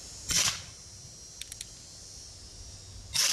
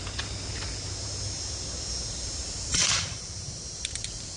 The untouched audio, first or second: first